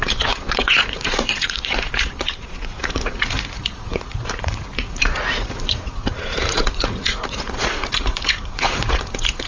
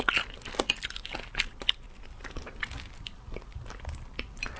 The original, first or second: second